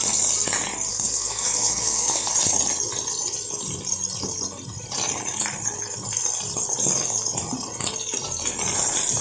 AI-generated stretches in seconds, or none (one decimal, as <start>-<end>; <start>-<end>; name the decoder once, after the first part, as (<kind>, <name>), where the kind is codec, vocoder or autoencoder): 0.9-2.3 (codec, SNAC)